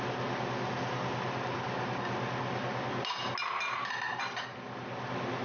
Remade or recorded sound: recorded